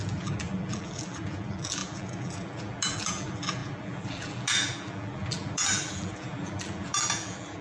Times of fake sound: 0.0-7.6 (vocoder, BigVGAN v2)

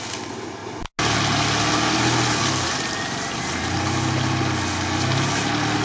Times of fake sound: none

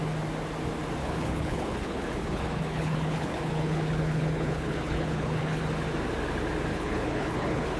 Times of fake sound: 1.0-5.6 (codec, HILCodec); 6.7-7.8